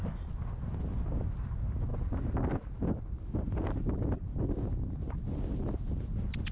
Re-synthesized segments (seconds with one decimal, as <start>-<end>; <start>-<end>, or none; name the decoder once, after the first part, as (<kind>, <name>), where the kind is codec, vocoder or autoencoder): none